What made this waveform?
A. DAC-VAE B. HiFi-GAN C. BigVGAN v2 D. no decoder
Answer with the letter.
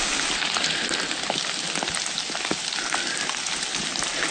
D